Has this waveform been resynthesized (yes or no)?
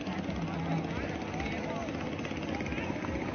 no